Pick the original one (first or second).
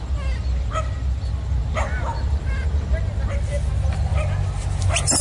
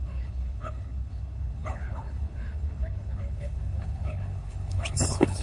first